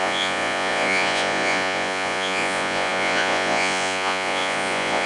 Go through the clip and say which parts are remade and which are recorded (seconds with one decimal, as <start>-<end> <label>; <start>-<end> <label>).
0.0-5.1 remade